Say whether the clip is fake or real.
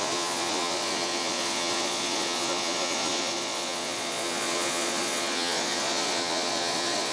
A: fake